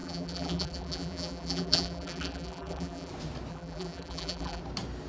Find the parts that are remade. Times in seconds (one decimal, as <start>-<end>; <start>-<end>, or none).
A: 0.0-3.1; 3.5-4.6

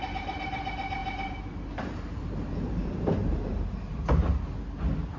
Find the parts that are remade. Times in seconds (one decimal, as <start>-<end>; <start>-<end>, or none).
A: 0.0-4.3

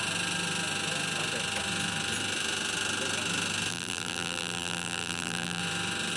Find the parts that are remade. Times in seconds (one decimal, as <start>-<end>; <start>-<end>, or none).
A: 3.7-5.6

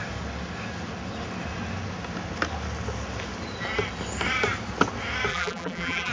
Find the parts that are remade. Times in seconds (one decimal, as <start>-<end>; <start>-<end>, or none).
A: 5.3-6.1